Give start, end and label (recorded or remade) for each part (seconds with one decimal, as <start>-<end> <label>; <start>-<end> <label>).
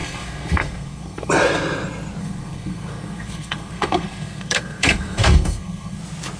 0.0-1.3 remade; 1.3-2.2 recorded; 2.2-6.0 remade; 6.0-6.4 recorded